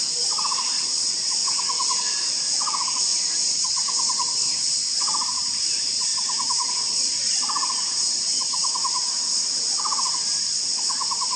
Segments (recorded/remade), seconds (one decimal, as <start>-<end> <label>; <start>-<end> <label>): 0.0-1.4 remade; 1.4-2.0 recorded; 2.0-11.4 remade